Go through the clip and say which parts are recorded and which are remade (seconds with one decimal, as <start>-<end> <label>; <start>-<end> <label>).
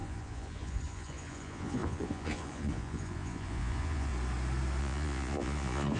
0.0-4.1 remade; 4.1-4.8 recorded; 4.8-6.0 remade